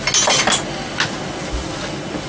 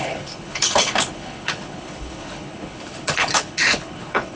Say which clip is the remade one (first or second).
second